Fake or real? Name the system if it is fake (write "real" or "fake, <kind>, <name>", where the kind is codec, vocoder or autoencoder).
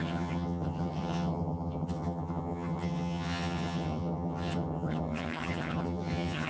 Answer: fake, vocoder, HiFi-GAN